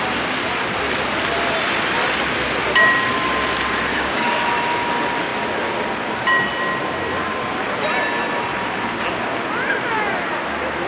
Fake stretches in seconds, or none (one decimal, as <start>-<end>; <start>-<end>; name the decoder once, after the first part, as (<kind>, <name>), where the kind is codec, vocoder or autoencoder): 3.9-4.5 (codec, DAC)